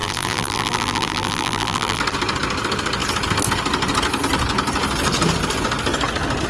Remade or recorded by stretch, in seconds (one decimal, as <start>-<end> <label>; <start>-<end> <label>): 0.0-2.0 remade; 2.0-6.5 recorded